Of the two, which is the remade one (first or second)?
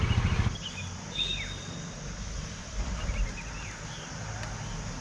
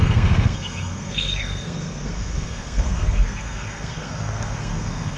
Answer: second